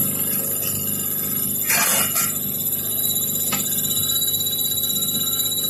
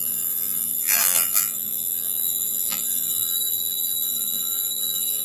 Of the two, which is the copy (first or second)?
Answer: second